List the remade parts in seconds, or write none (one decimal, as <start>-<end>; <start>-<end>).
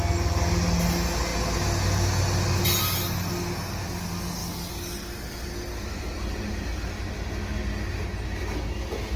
none